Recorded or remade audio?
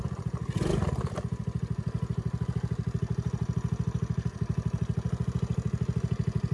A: recorded